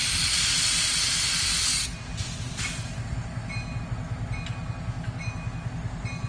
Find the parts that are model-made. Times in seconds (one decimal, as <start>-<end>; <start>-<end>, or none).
none